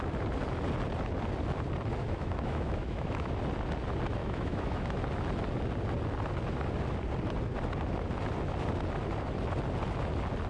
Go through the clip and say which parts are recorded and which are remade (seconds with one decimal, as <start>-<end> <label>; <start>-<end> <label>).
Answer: 0.0-2.0 recorded; 2.0-3.3 remade; 3.3-4.2 recorded; 4.2-4.9 remade; 4.9-10.5 recorded